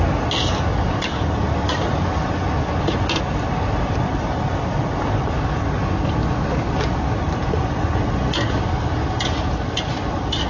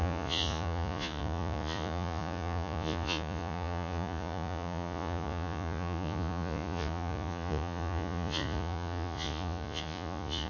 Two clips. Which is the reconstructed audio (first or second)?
second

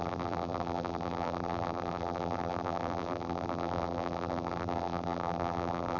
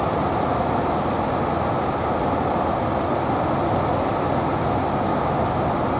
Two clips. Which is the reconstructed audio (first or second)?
first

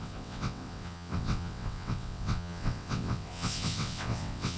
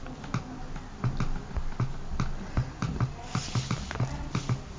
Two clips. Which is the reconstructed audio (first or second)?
first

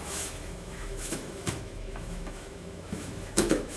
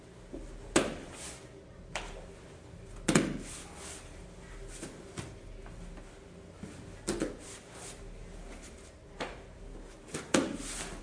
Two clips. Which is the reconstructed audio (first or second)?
first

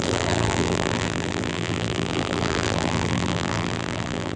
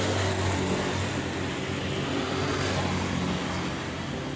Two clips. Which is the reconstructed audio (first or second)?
first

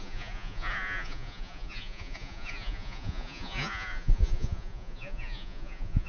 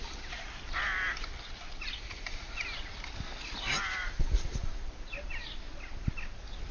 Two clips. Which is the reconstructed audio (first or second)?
first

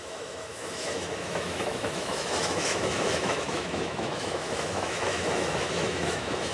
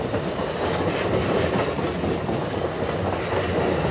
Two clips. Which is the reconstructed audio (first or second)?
first